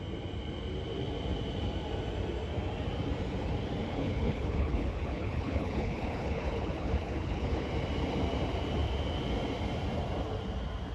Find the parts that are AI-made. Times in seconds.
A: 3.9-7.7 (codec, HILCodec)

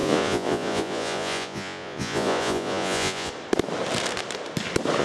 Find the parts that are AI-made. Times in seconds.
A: 0.0-3.3 (vocoder, Vocos)

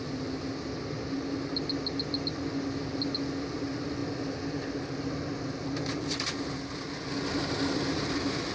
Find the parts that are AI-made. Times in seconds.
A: none

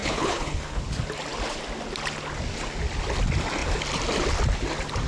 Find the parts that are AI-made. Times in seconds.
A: 0.0-0.8 (codec, HILCodec)

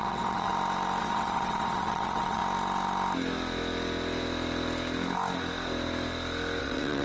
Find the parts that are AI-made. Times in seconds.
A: 0.0-0.5 (vocoder, WaveNeXt); 1.0-2.4; 6.6-7.0

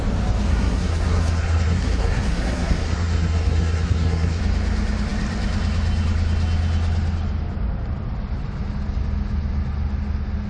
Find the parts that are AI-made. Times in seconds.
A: 0.5-4.4 (codec, SNAC)

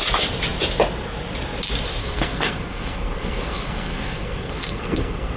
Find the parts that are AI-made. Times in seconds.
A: 2.0-5.4 (codec, SNAC)